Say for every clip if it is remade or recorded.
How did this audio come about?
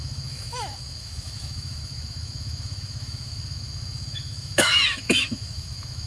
remade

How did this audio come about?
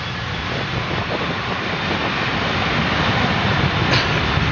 recorded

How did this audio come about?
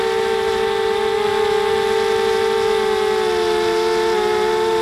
recorded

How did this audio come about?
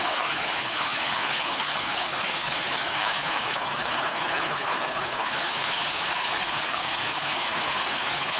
remade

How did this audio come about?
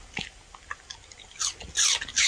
recorded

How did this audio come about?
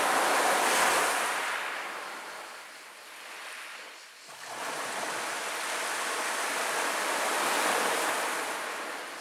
recorded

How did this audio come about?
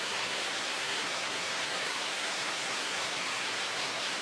remade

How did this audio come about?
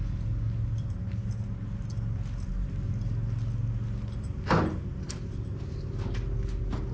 recorded